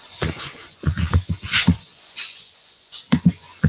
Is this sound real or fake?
fake